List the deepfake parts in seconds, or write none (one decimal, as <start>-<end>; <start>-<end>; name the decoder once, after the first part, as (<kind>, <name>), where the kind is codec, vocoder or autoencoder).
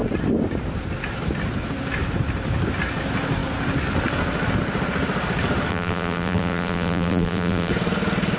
5.7-7.7 (vocoder, BigVGAN v2)